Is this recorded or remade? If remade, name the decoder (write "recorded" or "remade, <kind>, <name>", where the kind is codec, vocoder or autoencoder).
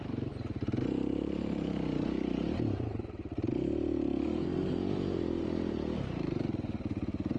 remade, vocoder, BigVGAN v2